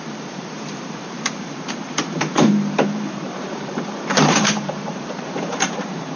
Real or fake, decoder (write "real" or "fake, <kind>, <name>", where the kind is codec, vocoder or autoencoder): fake, vocoder, BigVGAN v2